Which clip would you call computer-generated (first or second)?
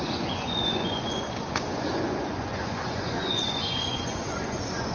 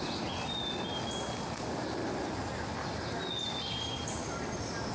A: first